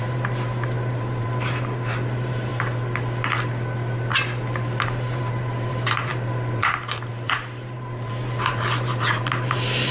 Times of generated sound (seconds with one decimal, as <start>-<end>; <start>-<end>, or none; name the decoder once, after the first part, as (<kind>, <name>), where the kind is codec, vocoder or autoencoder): 0.0-2.5 (vocoder, BigVGAN v2); 4.8-9.9